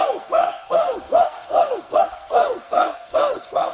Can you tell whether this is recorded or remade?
remade